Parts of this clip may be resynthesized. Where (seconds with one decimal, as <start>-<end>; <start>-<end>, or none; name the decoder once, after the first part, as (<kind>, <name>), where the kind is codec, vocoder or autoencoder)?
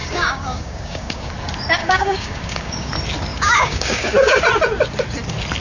0.0-1.3 (codec, DAC); 1.8-2.9; 3.3-4.4